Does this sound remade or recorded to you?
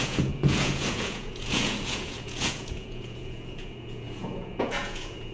remade